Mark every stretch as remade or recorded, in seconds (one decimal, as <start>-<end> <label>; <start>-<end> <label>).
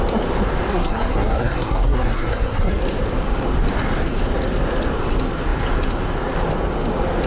0.0-0.7 recorded; 0.7-2.8 remade; 2.8-7.3 recorded